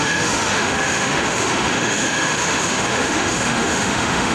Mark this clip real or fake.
fake